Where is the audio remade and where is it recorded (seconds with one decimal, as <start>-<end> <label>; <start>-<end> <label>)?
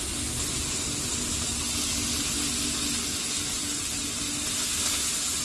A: 0.0-5.4 recorded